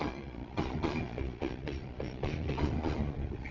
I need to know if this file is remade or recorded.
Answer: remade